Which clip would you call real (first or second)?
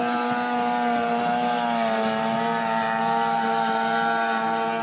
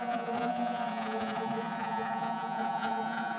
first